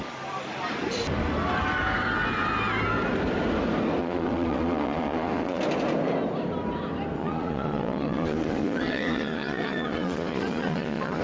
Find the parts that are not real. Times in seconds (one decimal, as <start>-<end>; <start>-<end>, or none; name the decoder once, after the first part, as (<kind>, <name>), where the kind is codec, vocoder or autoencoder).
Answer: 4.0-5.6 (vocoder, Vocos); 7.2-11.2